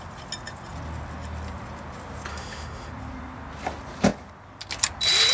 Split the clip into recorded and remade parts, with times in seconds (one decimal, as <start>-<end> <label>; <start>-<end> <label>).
0.0-2.3 recorded; 2.3-2.9 remade; 2.9-5.3 recorded